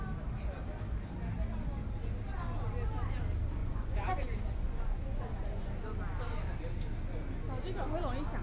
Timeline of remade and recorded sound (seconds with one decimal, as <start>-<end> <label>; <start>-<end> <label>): 0.0-3.6 recorded; 3.6-5.7 remade; 5.7-8.4 recorded